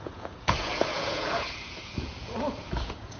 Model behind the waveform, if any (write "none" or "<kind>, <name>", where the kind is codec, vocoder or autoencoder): vocoder, Vocos